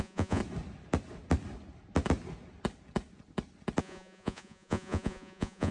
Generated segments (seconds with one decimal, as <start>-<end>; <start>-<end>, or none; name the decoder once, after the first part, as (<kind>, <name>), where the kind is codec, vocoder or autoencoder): 0.0-0.4 (vocoder, Vocos); 3.8-5.7